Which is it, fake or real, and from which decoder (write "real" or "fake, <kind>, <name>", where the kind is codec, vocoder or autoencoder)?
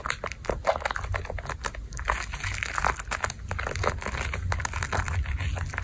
real